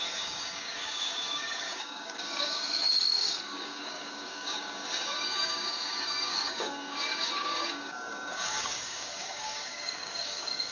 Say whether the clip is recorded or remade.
remade